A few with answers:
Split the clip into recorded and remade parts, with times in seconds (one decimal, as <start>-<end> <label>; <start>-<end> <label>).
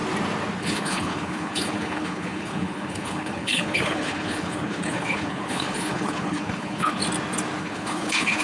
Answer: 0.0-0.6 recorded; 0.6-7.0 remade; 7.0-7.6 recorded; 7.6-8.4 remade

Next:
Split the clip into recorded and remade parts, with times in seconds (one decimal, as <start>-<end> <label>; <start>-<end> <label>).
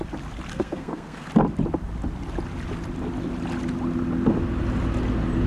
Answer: 0.0-0.5 recorded; 0.5-1.3 remade; 1.3-5.5 recorded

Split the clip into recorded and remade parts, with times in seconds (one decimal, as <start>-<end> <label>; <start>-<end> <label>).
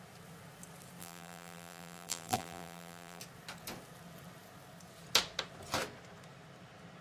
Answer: 0.0-1.0 recorded; 1.0-3.2 remade; 3.2-7.0 recorded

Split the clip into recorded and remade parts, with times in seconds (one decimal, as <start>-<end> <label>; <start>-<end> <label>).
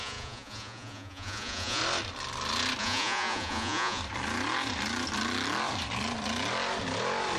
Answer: 0.0-1.8 remade; 1.8-2.8 recorded; 2.8-4.0 remade; 4.0-7.4 recorded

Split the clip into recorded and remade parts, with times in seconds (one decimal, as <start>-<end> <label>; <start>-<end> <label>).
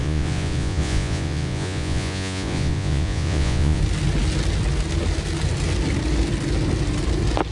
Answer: 0.0-3.8 remade; 3.8-7.5 recorded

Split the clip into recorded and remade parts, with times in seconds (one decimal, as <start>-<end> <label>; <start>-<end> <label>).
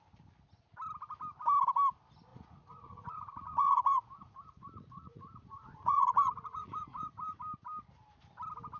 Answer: 0.0-2.3 recorded; 2.3-7.4 remade; 7.4-8.8 recorded